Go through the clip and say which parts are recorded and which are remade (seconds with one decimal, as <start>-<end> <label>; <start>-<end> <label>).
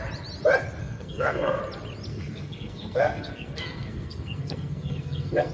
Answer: 0.0-0.8 recorded; 0.8-1.6 remade; 1.6-2.1 recorded; 2.1-5.5 remade